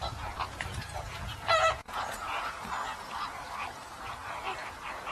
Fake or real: fake